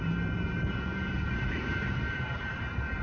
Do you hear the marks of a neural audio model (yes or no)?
yes